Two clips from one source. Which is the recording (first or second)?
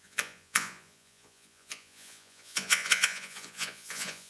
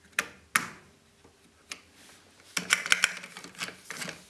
second